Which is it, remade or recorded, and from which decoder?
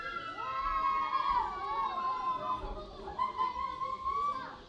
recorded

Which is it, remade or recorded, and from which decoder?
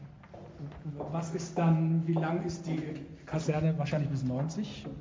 recorded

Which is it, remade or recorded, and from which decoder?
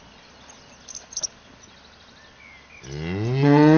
recorded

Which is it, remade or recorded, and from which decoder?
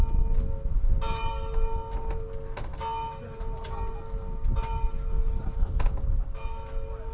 recorded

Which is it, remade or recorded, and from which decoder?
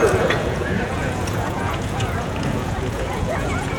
remade, vocoder, Vocos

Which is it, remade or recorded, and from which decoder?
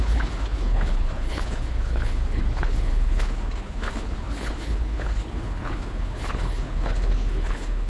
remade, codec, HILCodec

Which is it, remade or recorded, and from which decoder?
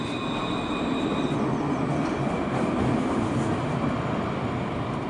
recorded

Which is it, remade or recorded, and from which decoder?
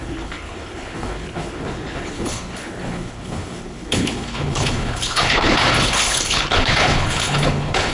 remade, codec, HILCodec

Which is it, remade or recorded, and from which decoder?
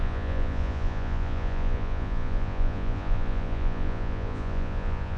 remade, vocoder, Vocos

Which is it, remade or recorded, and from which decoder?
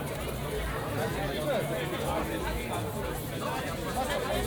recorded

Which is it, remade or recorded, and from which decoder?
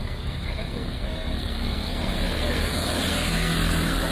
remade, codec, SNAC